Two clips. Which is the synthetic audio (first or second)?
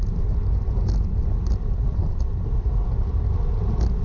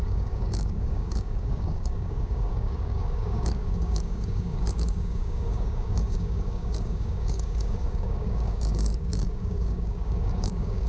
second